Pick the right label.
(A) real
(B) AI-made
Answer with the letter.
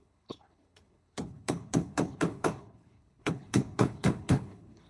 B